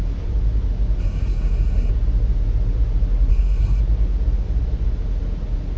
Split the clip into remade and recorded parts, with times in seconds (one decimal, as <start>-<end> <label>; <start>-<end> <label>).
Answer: 0.0-1.0 recorded; 1.0-1.9 remade; 1.9-3.3 recorded; 3.3-3.8 remade; 3.8-5.8 recorded